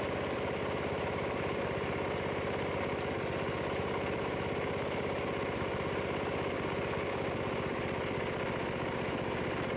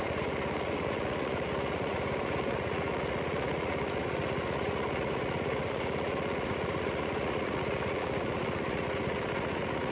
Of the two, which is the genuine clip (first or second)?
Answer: first